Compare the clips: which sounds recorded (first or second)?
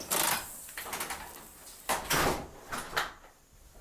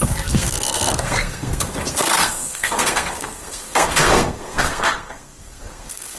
first